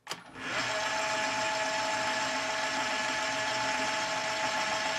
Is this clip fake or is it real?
real